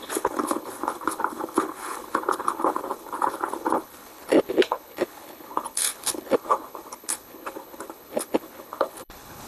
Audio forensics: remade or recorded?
remade